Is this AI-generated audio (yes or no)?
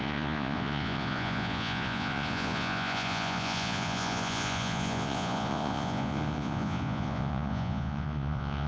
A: yes